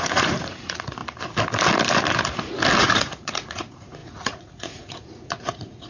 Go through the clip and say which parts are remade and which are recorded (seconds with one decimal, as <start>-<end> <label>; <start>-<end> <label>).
0.0-1.0 remade; 1.0-2.8 recorded; 2.8-5.9 remade